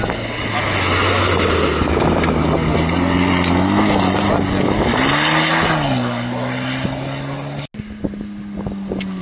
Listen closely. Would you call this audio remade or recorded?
recorded